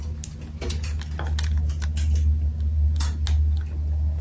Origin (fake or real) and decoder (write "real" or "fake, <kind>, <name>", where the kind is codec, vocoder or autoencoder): real